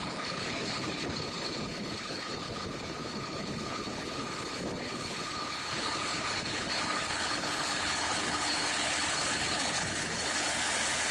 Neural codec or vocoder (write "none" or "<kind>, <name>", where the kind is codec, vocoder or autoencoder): codec, HILCodec